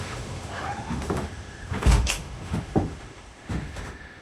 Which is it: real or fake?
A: fake